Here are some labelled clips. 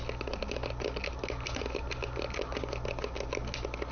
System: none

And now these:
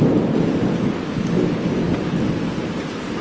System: none